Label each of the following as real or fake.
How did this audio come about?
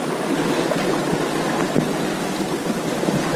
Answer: real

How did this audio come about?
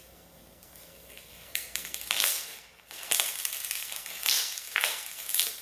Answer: fake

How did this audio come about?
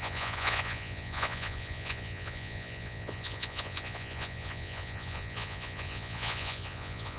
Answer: fake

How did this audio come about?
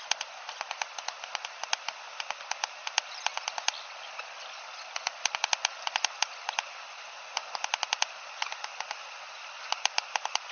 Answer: real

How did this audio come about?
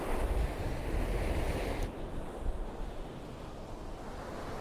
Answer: real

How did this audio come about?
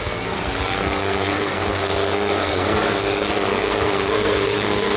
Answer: fake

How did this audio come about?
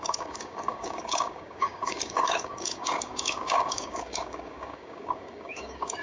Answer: fake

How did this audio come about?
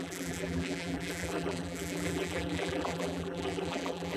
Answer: fake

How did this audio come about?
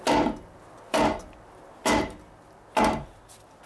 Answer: real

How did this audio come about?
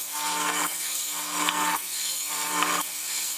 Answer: fake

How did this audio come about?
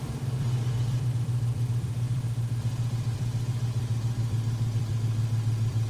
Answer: fake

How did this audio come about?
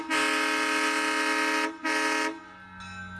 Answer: real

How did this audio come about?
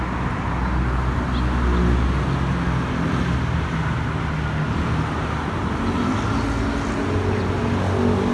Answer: real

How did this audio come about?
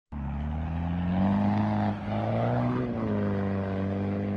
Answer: real